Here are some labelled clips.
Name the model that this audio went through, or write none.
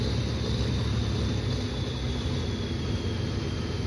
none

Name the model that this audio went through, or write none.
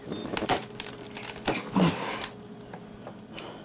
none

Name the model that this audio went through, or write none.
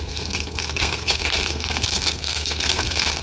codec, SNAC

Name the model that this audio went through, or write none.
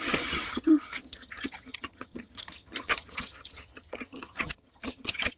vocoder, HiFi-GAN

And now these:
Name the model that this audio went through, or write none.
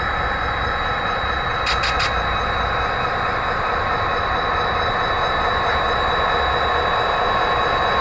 none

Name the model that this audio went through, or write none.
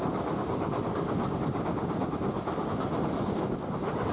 none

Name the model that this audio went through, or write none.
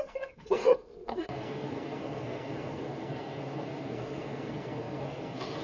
codec, SNAC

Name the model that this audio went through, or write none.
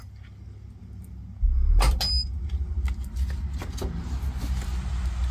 none